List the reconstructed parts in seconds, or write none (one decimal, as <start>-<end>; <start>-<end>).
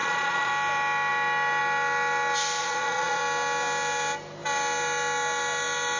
0.0-0.5; 2.6-3.2